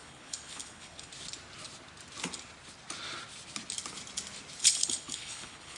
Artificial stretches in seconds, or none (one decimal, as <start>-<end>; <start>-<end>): 0.0-1.1; 4.6-5.8